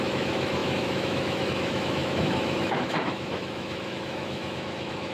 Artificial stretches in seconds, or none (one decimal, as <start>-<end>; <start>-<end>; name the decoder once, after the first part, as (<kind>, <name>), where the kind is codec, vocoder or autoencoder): 0.0-5.1 (autoencoder, DAC-VAE)